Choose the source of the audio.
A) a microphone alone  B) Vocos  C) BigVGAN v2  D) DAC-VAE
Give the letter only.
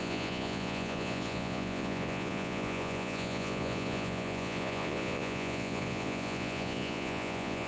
B